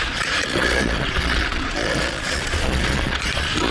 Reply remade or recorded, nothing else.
remade